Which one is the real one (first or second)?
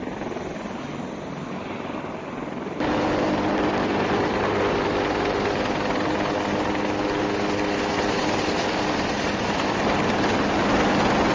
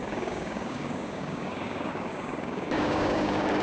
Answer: first